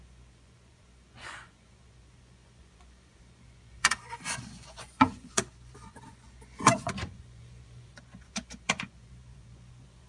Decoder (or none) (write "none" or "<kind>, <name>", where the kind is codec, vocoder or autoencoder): vocoder, Vocos